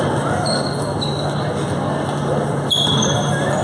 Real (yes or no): yes